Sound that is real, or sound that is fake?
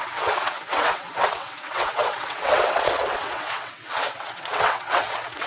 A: fake